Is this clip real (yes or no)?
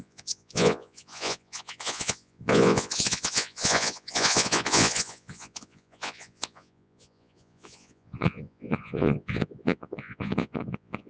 no